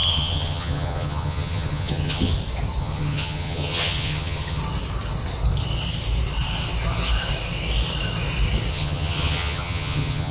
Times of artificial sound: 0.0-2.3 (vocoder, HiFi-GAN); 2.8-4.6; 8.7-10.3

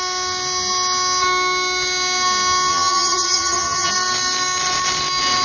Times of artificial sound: 2.7-3.9 (vocoder, HiFi-GAN)

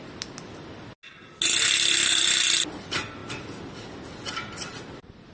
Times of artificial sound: none

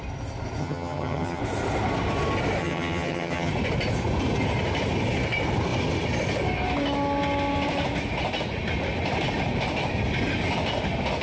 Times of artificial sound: 0.6-1.4 (vocoder, HiFi-GAN); 2.6-3.5

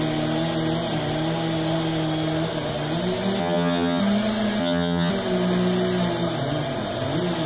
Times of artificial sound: 3.4-4.0 (vocoder, HiFi-GAN); 4.6-5.1

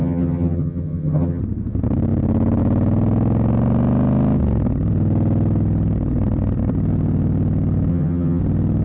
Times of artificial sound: 0.0-1.4 (vocoder, HiFi-GAN); 7.9-8.4